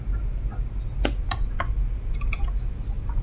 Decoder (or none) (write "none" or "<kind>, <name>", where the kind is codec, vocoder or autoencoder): none